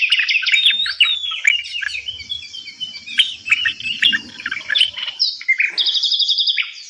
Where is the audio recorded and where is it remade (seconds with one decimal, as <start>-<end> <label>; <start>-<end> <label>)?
0.0-6.9 recorded